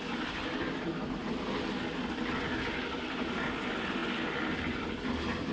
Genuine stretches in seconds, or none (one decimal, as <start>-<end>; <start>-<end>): 0.0-5.5